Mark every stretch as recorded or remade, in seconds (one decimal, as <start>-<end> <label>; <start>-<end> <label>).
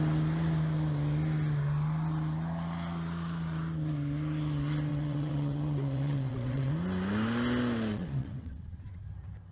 0.0-4.9 recorded; 4.9-6.7 remade; 6.7-7.9 recorded; 7.9-9.0 remade; 9.0-9.5 recorded